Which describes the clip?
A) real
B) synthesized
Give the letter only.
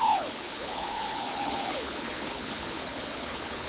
B